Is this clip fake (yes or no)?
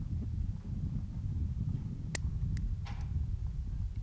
no